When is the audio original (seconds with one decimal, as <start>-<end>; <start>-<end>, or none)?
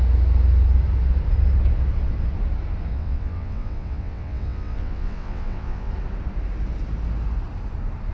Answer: 0.0-2.9; 5.9-8.1